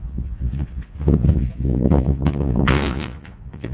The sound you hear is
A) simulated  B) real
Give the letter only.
A